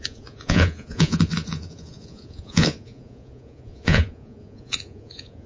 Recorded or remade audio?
remade